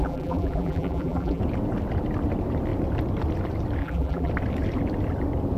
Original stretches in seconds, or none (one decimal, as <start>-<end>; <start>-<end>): 1.4-3.8; 4.3-5.6